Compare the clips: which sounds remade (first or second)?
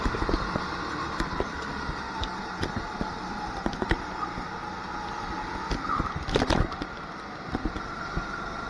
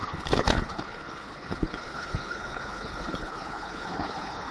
second